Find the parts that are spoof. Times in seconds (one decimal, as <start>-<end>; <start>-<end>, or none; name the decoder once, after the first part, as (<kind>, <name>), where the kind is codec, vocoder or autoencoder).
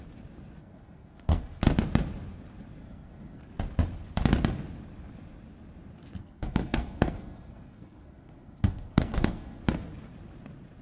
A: 0.6-1.6 (codec, SNAC); 2.8-3.4; 6.2-9.6